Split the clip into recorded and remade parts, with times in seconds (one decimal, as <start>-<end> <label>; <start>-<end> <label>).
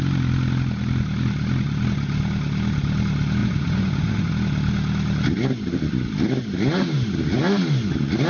0.0-3.4 recorded; 3.4-4.3 remade; 4.3-8.3 recorded